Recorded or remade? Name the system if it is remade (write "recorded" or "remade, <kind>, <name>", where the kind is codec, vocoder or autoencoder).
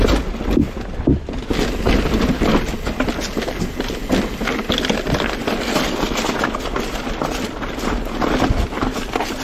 recorded